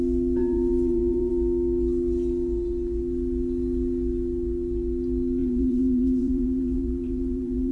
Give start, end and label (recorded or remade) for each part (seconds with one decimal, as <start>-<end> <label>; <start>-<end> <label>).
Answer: 0.0-0.4 recorded; 0.4-1.3 remade; 1.3-5.4 recorded; 5.4-7.7 remade